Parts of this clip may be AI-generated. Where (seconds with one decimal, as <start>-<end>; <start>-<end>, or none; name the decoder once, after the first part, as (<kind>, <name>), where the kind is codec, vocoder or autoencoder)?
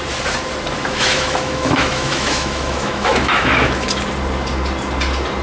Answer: 0.8-4.0 (autoencoder, DAC-VAE)